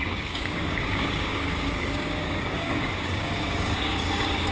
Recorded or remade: remade